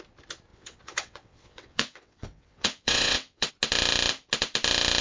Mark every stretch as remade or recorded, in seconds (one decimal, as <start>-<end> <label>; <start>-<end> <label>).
0.0-0.5 recorded; 0.5-3.5 remade; 3.5-5.0 recorded